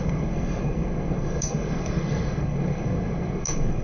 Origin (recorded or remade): remade